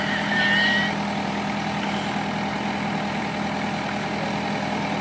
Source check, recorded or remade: recorded